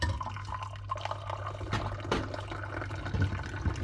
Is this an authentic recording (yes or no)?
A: yes